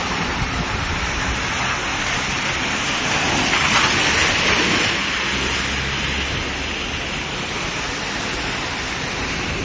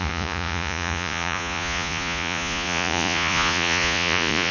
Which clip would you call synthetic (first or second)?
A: second